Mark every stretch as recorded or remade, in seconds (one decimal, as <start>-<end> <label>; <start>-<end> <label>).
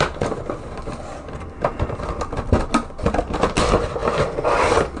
0.0-5.0 recorded